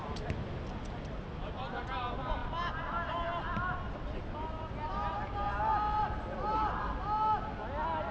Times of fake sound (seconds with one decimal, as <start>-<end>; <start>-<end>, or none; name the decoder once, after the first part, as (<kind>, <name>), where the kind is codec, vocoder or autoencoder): none